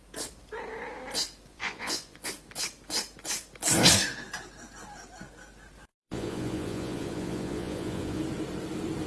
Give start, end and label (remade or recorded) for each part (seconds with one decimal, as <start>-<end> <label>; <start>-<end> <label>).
0.0-1.5 recorded; 1.5-2.3 remade; 2.3-5.9 recorded; 5.9-8.2 remade; 8.2-9.1 recorded